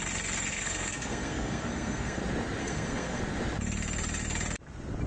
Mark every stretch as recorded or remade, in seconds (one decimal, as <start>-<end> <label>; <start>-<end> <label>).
0.0-0.5 recorded; 0.5-2.2 remade; 2.2-2.6 recorded; 2.6-3.2 remade; 3.2-5.1 recorded

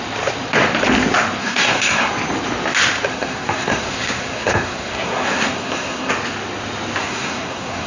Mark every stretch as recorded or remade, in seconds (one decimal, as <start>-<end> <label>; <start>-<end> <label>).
0.0-1.4 recorded; 1.4-2.1 remade; 2.1-3.1 recorded; 3.1-6.1 remade; 6.1-7.0 recorded; 7.0-7.9 remade